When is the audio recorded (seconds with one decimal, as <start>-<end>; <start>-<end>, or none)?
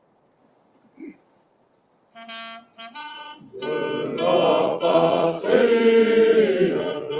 1.8-3.0; 3.5-4.6; 6.0-6.7